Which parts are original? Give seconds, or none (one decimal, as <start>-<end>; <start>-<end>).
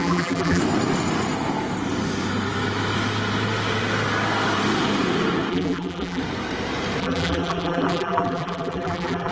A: 0.6-5.5; 6.2-7.0